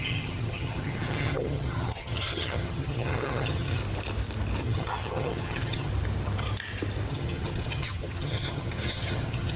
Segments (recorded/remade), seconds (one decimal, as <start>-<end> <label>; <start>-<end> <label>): 0.0-3.8 remade; 3.8-4.6 recorded; 4.6-5.9 remade; 5.9-7.1 recorded; 7.1-9.6 remade